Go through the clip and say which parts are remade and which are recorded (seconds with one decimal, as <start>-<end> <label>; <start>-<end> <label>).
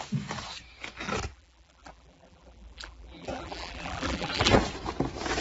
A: 0.0-1.3 recorded; 1.3-4.5 remade; 4.5-5.4 recorded